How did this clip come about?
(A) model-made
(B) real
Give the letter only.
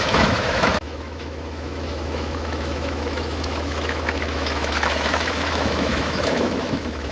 A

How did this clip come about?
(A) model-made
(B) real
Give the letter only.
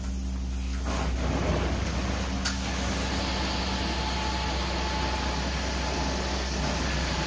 B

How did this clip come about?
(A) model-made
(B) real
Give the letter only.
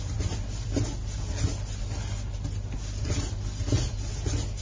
B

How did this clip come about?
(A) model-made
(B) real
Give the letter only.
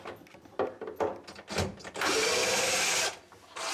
B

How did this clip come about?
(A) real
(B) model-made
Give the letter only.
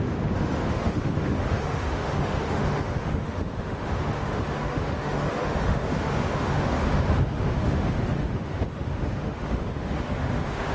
B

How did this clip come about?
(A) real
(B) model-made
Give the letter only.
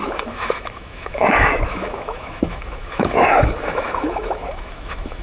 B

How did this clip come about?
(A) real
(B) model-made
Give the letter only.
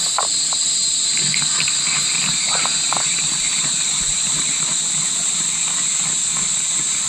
A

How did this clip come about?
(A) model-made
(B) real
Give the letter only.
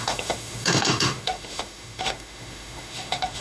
A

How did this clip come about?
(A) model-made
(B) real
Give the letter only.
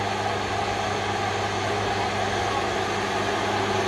B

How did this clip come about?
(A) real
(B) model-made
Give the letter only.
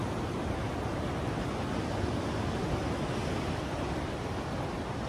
A